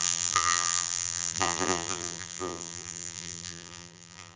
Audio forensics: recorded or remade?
remade